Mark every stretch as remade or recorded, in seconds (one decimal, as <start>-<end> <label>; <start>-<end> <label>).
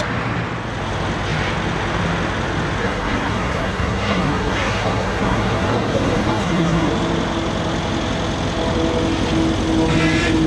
0.0-2.8 recorded; 2.8-6.9 remade; 6.9-10.5 recorded